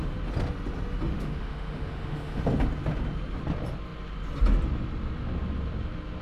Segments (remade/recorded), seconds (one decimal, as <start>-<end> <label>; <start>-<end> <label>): 0.0-1.1 recorded; 1.1-2.4 remade; 2.4-6.2 recorded